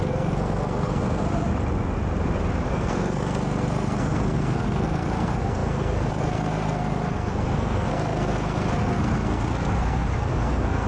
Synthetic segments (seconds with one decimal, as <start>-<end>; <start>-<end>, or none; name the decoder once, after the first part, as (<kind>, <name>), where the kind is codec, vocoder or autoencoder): 0.0-1.2 (codec, SNAC); 2.7-10.9